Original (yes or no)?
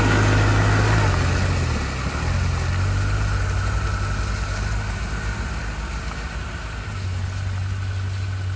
yes